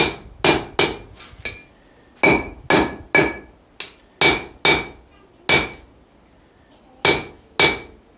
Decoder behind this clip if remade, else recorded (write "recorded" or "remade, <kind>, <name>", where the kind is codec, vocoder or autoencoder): recorded